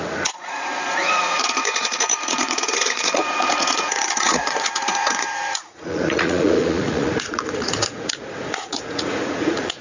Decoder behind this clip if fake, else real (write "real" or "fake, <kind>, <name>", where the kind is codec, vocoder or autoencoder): fake, vocoder, Vocos